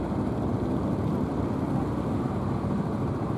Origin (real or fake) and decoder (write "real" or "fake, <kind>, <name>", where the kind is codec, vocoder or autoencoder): real